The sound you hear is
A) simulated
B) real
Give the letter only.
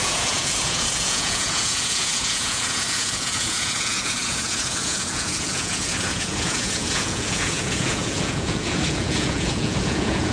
A